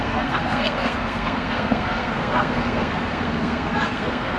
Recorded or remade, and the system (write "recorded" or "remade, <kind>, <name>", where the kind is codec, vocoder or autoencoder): remade, codec, SNAC